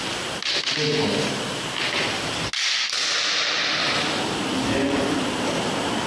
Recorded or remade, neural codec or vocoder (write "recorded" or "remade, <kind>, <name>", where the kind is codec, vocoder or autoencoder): recorded